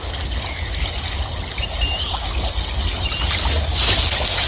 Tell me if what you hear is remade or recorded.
recorded